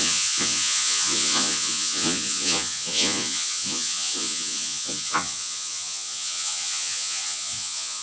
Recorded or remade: remade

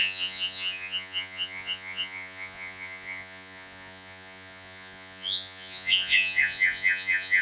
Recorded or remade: remade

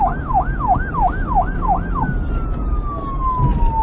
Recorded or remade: recorded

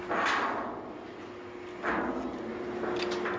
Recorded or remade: recorded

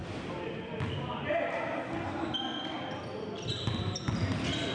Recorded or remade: recorded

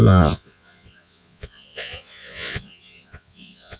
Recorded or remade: remade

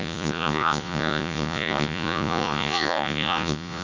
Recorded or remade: remade